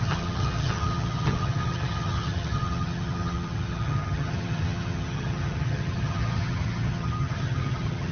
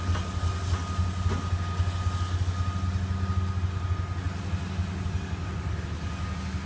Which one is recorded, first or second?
second